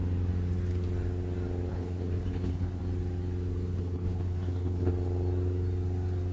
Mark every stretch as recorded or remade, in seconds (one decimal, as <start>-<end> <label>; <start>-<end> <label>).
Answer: 0.0-1.7 recorded; 1.7-2.8 remade; 2.8-3.7 recorded; 3.7-4.9 remade; 4.9-6.3 recorded